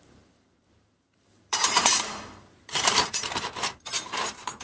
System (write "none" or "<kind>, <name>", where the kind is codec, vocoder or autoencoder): vocoder, BigVGAN v2